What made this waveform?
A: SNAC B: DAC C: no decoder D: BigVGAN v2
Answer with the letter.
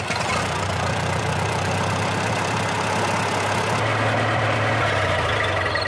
C